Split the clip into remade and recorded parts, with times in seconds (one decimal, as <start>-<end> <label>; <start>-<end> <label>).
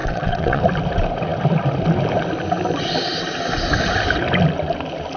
0.0-0.6 remade; 0.6-5.2 recorded